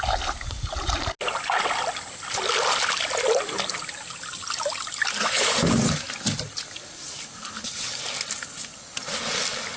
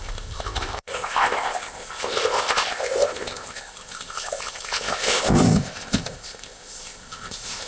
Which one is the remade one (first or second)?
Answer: second